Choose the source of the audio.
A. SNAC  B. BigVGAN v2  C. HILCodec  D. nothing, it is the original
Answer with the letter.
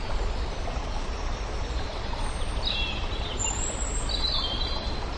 D